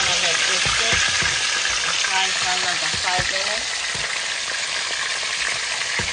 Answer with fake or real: real